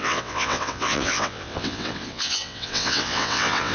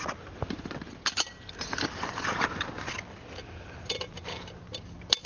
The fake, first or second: first